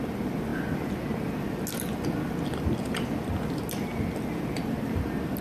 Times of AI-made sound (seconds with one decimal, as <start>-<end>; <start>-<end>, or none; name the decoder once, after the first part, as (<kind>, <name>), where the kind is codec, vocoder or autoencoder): none